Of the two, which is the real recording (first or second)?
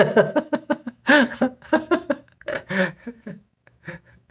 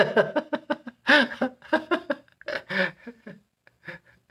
second